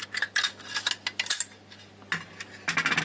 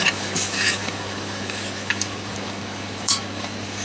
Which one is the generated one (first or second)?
second